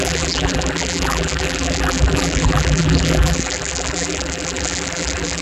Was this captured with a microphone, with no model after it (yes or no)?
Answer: no